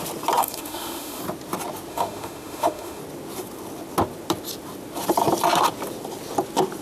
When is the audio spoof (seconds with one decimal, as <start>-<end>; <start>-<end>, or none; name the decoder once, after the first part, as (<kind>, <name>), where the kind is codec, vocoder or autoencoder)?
0.4-1.2 (autoencoder, DAC-VAE); 1.9-3.0